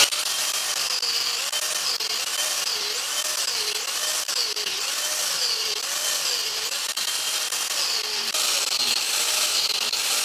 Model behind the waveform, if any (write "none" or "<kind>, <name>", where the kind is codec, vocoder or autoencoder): none